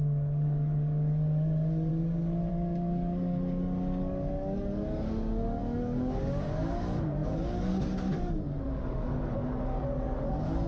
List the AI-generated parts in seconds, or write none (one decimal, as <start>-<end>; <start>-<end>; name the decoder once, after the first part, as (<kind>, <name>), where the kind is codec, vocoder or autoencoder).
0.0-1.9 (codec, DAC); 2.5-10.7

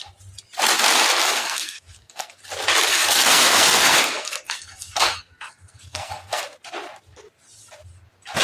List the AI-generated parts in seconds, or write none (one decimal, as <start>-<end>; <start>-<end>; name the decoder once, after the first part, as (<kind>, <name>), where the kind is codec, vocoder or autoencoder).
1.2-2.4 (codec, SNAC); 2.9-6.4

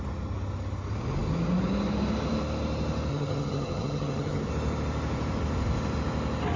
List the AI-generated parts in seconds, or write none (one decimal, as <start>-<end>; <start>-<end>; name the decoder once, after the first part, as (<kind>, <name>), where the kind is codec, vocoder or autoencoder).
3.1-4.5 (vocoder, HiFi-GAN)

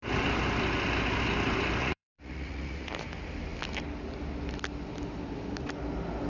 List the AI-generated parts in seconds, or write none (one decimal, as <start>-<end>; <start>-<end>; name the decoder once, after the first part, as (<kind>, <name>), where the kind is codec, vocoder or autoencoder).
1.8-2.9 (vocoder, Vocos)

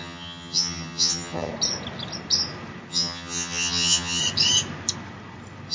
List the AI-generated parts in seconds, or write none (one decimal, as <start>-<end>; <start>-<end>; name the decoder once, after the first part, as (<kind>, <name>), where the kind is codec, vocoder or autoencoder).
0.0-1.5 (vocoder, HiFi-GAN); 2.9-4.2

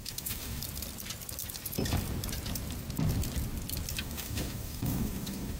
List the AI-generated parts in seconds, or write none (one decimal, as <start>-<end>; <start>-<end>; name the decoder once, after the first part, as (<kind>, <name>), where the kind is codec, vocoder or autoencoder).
0.0-0.6 (codec, DAC); 4.0-5.6

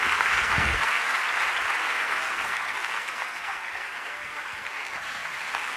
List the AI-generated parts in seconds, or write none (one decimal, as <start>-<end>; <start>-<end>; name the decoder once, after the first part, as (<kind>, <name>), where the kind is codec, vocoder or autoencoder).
0.0-1.2 (codec, SNAC); 1.8-5.8